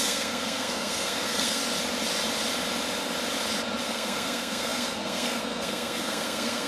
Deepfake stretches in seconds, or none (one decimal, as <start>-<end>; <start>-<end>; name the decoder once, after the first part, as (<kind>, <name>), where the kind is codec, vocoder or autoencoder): 0.0-1.6 (codec, SNAC); 3.8-6.7